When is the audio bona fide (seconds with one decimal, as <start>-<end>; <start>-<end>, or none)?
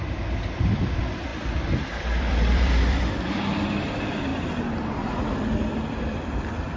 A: 4.3-4.8